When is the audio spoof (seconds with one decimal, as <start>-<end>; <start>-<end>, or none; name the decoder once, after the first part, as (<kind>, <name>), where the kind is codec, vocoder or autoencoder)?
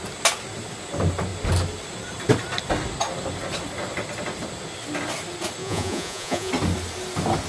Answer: 5.6-6.5 (vocoder, Vocos)